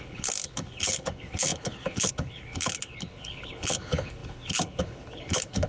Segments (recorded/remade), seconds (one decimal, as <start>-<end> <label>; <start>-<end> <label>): 0.0-5.7 remade

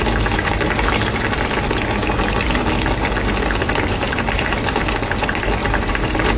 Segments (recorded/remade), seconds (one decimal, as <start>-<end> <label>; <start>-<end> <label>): 0.0-5.6 recorded; 5.6-6.4 remade

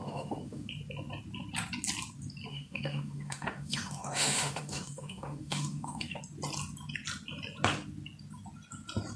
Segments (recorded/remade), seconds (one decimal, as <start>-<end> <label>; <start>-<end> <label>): 0.0-0.7 remade; 0.7-2.5 recorded; 2.5-6.2 remade; 6.2-9.2 recorded